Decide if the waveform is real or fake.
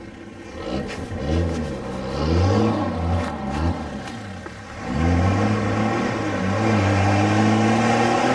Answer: real